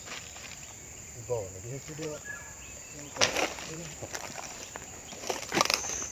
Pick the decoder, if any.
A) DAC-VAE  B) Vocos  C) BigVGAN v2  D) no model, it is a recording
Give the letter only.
C